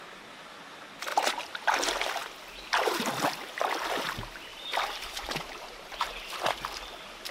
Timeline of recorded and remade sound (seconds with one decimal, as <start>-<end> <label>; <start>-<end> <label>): 0.0-1.1 recorded; 1.1-1.6 remade; 1.6-4.5 recorded; 4.5-6.2 remade; 6.2-7.3 recorded